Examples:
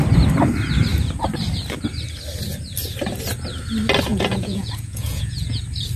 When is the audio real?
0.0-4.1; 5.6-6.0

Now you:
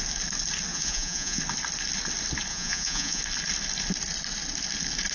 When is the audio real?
0.0-0.7; 1.4-2.5; 3.2-5.1

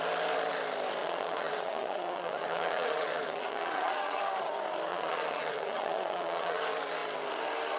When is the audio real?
0.0-1.0; 4.2-4.9; 6.6-7.8